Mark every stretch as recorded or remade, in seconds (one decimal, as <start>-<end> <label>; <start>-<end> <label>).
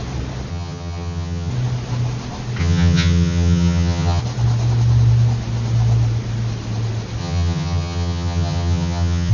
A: 0.0-0.5 recorded; 0.5-1.5 remade; 1.5-2.6 recorded; 2.6-4.2 remade; 4.2-7.2 recorded; 7.2-9.3 remade